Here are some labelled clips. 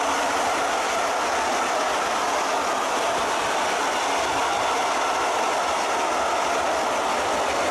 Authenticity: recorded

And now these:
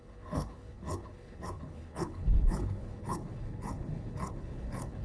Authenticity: remade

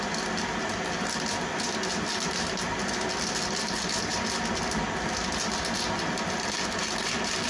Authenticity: recorded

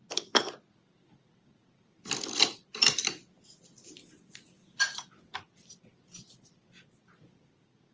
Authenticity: recorded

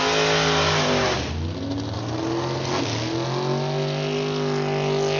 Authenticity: recorded